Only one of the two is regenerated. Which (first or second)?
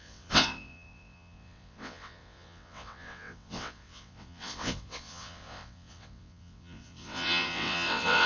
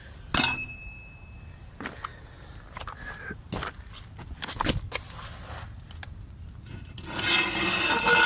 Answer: first